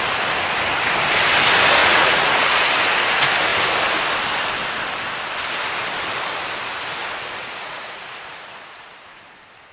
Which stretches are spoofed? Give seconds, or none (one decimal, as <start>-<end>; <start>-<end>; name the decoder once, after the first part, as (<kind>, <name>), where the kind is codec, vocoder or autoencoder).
1.8-2.7 (vocoder, Vocos); 7.4-8.9